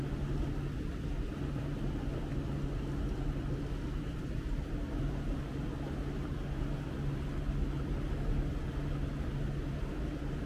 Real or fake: real